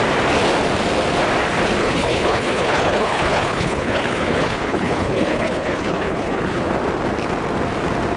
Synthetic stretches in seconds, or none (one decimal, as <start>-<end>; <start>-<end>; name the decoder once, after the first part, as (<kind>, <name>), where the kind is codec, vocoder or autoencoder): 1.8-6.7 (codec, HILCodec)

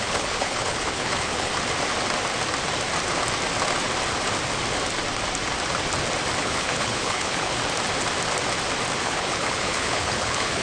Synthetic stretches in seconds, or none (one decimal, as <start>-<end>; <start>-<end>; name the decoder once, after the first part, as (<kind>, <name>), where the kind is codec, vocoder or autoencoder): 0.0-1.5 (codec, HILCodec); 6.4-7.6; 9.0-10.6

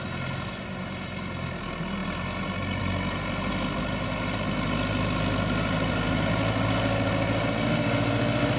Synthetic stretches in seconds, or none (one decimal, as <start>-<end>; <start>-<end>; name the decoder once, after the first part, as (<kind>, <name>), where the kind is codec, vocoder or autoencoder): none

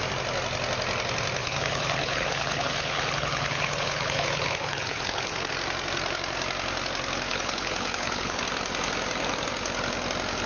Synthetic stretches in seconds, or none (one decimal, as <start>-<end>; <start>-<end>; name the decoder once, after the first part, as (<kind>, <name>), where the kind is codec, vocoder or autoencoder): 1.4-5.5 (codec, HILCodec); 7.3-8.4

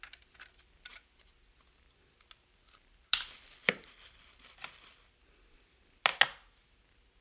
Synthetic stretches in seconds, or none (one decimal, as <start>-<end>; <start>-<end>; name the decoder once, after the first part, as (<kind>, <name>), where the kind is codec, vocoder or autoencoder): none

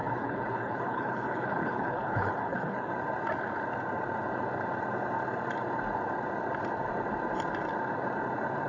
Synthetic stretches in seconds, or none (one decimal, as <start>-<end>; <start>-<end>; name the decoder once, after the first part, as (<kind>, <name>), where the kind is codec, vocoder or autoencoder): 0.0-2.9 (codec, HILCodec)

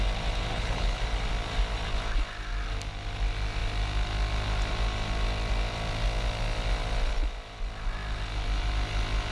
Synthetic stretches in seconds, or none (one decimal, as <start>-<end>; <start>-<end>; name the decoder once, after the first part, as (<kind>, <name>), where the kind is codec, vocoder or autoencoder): 0.5-1.0 (codec, HILCodec)

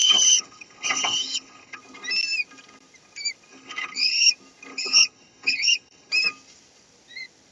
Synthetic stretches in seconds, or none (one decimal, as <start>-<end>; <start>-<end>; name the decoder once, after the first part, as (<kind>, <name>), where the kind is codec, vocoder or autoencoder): 0.0-1.8 (codec, HILCodec); 3.5-4.3; 4.7-6.1